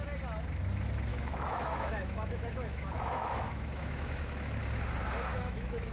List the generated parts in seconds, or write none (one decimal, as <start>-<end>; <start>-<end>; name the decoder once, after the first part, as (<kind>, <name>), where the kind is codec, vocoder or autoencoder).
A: 1.1-4.6 (autoencoder, DAC-VAE); 5.3-5.9